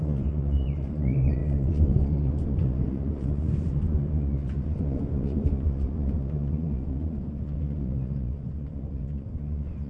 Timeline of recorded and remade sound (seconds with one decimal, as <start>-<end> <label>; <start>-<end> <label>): 0.0-9.9 remade